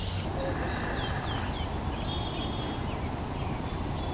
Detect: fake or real real